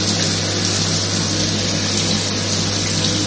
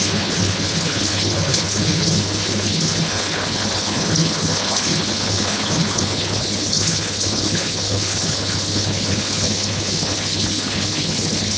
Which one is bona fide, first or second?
first